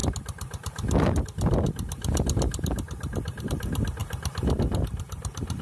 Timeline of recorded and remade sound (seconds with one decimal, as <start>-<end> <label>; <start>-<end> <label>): 0.0-5.6 recorded